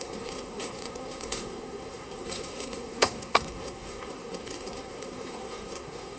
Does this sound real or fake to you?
fake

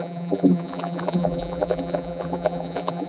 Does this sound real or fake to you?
fake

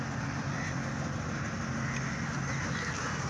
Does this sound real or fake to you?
real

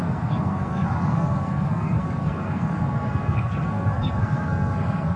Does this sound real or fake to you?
fake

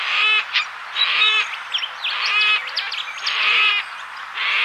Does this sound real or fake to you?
real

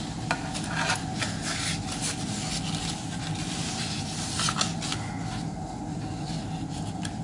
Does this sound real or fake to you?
real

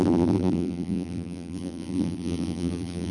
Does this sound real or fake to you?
fake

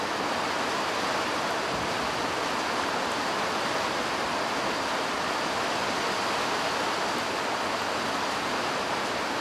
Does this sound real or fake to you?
real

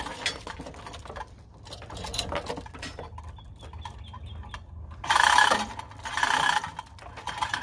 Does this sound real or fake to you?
real